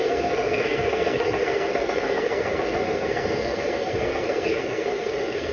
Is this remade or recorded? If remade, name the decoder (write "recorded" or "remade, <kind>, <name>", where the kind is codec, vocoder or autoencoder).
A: remade, codec, SNAC